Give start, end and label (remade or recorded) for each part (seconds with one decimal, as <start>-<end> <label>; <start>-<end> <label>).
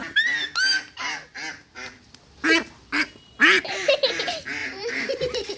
0.0-4.6 recorded; 4.6-5.6 remade